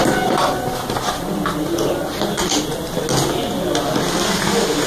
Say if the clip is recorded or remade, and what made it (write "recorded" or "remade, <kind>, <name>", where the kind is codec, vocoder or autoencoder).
recorded